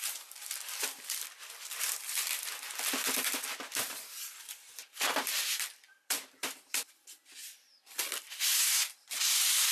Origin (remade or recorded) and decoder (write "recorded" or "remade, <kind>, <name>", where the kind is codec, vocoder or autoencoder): remade, vocoder, BigVGAN v2